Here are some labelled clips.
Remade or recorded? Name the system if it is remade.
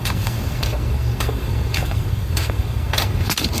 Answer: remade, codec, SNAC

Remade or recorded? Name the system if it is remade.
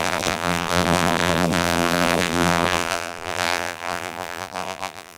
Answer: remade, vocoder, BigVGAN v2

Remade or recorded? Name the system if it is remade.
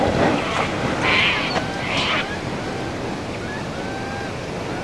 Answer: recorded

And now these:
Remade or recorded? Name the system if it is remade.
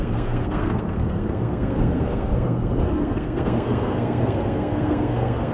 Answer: remade, codec, SNAC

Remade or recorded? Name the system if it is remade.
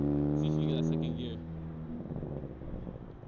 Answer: recorded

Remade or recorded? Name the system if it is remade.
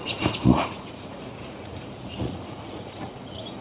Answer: remade, vocoder, Vocos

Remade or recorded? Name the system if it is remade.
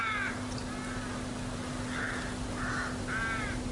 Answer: recorded